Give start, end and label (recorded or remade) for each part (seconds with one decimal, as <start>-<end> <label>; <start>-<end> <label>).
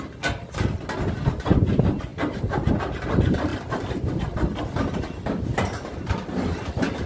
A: 0.0-2.1 recorded; 2.1-2.7 remade; 2.7-3.5 recorded; 3.5-4.2 remade; 4.2-7.1 recorded